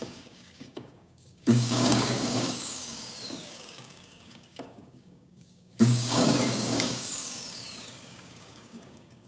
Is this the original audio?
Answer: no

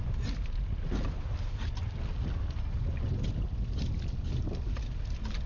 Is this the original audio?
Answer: yes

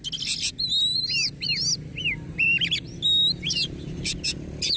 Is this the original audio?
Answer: yes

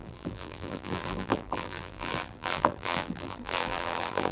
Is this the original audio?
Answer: no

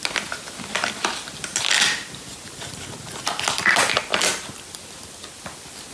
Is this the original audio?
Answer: yes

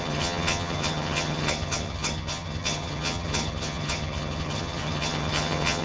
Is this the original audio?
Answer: no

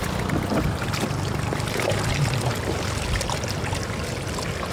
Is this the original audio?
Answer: yes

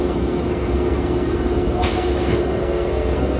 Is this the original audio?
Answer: no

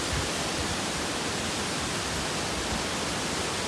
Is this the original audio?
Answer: yes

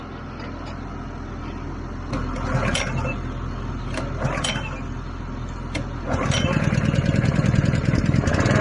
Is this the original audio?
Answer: yes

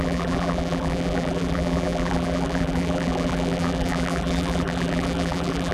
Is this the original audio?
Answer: no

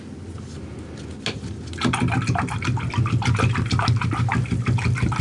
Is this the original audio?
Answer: yes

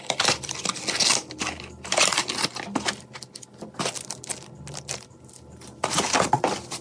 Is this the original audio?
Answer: yes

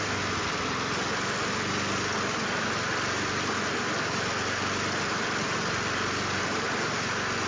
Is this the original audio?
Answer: yes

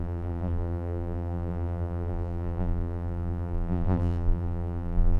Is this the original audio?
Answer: no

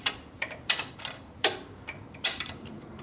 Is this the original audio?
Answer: no